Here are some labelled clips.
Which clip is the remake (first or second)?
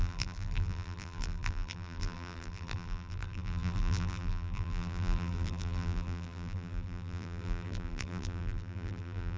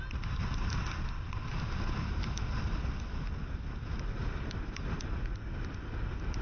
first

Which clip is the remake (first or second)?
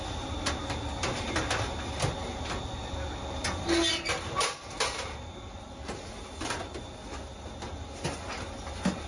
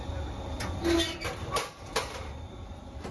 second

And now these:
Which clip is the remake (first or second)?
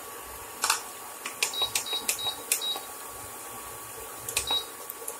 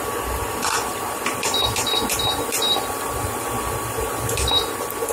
second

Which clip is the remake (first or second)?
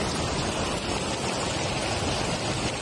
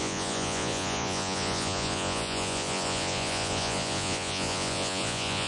second